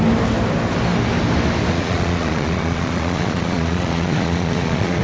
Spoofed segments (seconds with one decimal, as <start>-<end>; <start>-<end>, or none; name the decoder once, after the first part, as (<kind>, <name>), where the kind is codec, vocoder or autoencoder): 1.7-5.0 (vocoder, Vocos)